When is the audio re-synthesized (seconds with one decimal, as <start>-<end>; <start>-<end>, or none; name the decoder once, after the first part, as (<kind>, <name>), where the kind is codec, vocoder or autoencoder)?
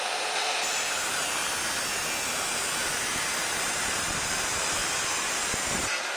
0.0-1.2 (vocoder, BigVGAN v2); 3.0-4.8; 5.3-6.2